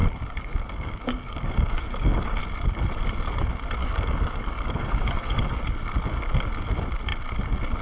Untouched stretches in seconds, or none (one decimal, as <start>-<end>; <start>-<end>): 2.4-3.8; 5.5-7.8